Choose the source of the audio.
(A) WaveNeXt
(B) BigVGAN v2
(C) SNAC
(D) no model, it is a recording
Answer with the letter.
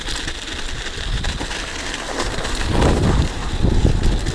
D